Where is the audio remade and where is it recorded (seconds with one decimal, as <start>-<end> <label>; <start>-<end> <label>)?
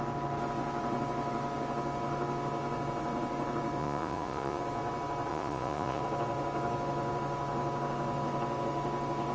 0.0-3.8 recorded; 3.8-4.6 remade; 4.6-5.3 recorded; 5.3-6.0 remade; 6.0-9.3 recorded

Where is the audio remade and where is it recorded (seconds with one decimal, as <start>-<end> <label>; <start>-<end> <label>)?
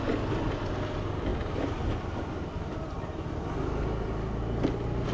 0.0-5.1 recorded